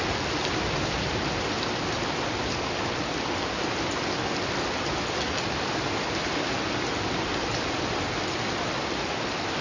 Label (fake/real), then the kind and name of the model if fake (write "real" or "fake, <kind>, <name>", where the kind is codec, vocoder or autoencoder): real